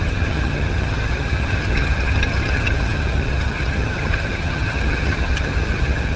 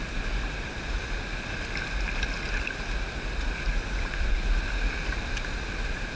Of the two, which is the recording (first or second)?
second